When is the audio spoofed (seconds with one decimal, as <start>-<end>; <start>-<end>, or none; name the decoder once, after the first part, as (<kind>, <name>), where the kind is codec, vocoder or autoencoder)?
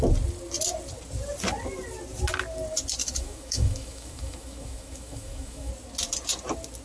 3.0-5.7 (autoencoder, DAC-VAE)